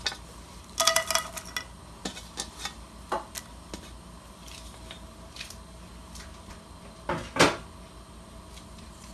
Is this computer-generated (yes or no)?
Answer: no